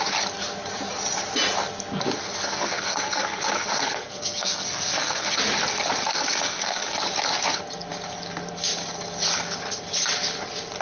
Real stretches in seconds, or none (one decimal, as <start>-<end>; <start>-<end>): 0.0-2.2; 5.4-6.1; 7.0-10.8